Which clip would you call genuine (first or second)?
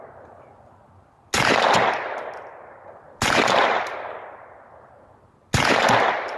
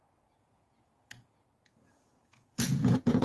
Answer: first